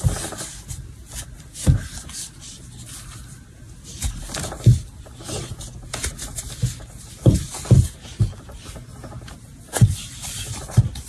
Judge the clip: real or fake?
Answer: real